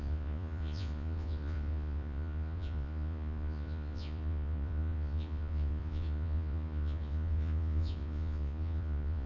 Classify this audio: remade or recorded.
remade